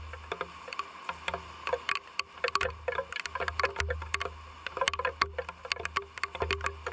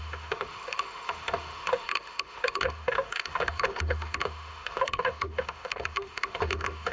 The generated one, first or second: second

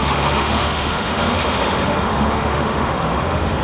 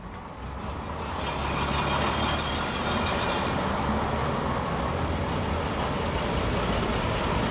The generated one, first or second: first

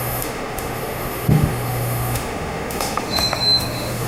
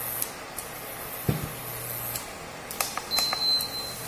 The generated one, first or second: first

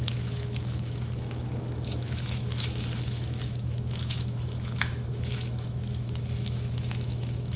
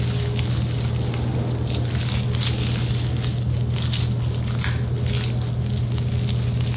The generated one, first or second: first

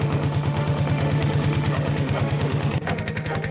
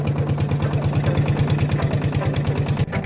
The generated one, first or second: first